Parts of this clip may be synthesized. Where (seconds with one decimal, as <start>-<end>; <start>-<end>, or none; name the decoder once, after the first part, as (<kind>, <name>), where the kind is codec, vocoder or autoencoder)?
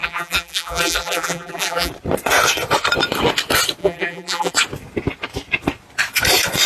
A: 0.0-1.9 (vocoder, BigVGAN v2); 3.8-4.5